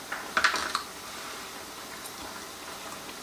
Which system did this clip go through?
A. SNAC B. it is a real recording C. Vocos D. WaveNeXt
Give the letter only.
B